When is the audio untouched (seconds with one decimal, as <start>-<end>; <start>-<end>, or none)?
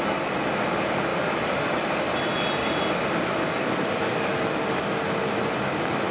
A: 0.0-6.1